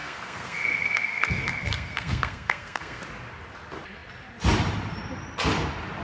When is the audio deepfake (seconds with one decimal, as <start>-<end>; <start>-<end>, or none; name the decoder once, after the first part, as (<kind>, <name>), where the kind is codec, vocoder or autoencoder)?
0.0-3.0 (codec, SNAC)